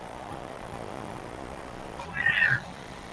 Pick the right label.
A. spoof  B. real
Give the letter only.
A